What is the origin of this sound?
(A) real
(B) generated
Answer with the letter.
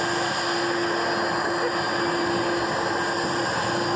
A